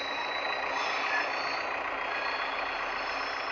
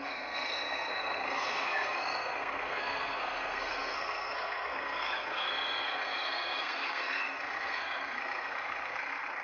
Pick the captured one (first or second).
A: first